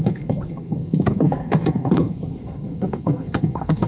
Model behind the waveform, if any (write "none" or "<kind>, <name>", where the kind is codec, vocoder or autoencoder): codec, SNAC